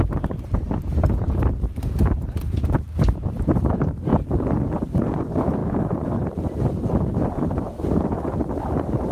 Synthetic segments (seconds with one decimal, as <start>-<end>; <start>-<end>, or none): 0.0-4.1; 4.9-9.1